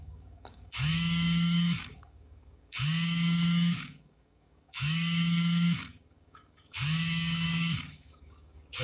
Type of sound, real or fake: fake